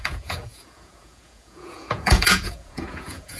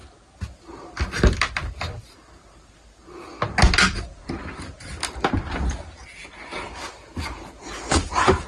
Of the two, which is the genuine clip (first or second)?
second